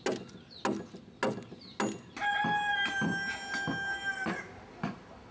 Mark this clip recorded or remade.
recorded